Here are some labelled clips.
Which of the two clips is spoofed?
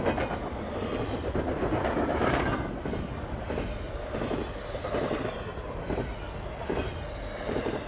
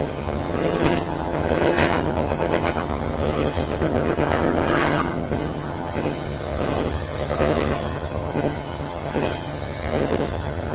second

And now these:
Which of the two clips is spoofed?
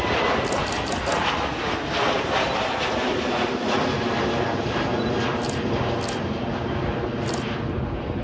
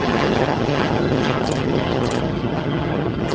second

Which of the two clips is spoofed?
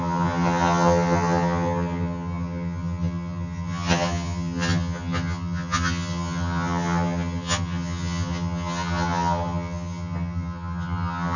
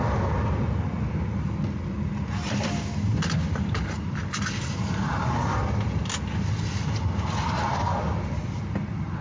first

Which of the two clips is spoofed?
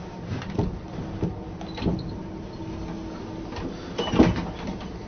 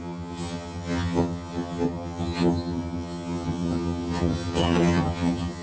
second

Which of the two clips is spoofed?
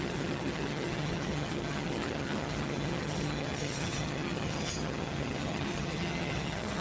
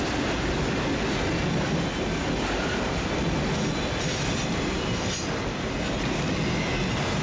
first